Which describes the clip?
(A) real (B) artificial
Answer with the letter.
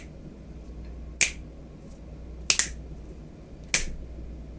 A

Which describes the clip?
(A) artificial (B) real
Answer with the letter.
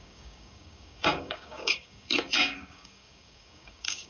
A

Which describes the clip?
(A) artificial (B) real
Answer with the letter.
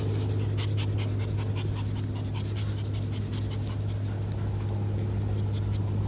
B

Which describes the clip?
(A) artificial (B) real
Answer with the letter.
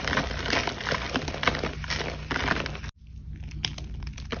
B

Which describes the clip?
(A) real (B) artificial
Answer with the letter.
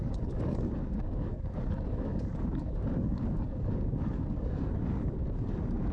B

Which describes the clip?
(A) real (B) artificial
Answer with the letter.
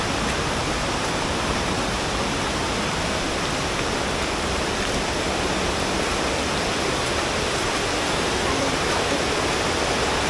A